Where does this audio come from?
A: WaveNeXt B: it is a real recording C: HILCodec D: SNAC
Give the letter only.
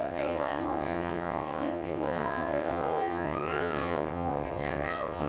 A